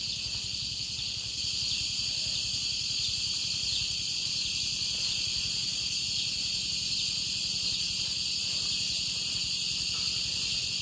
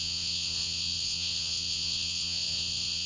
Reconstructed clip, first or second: second